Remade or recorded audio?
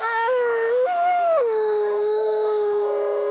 remade